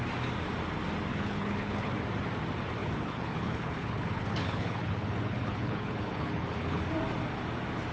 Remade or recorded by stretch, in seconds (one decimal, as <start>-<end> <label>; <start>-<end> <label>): 0.0-1.1 recorded; 1.1-1.9 remade; 1.9-2.8 recorded; 2.8-6.8 remade; 6.8-7.9 recorded